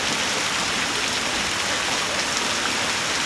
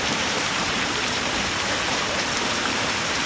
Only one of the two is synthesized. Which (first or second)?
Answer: second